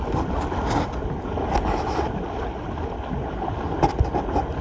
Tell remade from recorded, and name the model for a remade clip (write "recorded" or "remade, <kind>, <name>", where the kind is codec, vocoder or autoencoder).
recorded